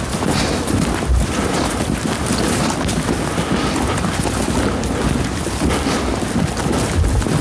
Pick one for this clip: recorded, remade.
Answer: recorded